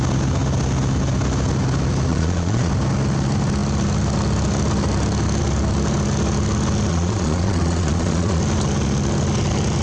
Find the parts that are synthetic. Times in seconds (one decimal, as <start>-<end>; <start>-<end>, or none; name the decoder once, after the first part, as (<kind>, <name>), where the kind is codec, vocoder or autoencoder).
2.1-2.7 (vocoder, Vocos); 6.9-8.4